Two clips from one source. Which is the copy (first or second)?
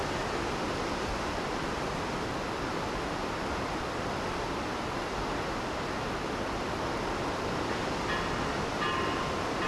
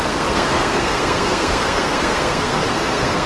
second